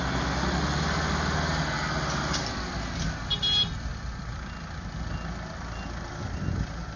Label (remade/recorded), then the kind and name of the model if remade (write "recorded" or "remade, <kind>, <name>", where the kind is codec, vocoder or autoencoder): recorded